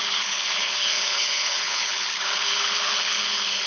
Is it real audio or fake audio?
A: fake